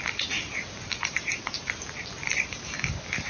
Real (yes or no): no